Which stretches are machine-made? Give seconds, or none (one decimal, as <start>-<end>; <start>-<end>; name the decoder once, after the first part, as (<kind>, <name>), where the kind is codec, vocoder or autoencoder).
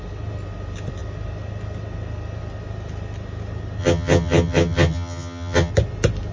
3.8-5.7 (vocoder, HiFi-GAN)